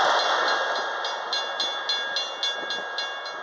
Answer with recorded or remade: recorded